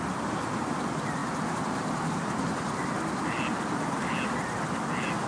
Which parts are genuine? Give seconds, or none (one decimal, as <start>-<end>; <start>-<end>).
0.0-5.3